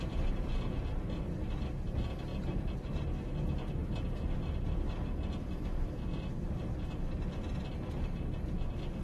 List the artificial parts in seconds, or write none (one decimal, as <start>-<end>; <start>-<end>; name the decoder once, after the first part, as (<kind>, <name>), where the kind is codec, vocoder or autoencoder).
none